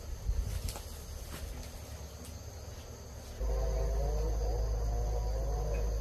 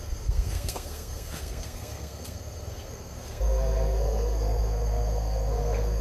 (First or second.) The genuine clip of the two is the first